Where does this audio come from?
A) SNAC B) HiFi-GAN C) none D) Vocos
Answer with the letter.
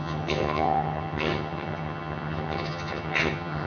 B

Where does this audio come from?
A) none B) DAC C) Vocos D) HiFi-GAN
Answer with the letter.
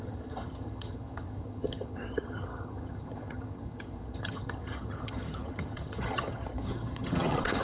D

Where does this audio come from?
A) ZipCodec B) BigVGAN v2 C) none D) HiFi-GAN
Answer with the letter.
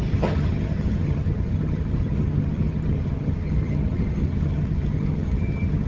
D